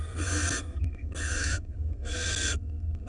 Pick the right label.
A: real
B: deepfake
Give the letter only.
B